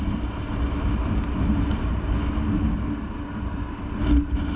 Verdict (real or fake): real